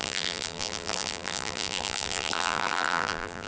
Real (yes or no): no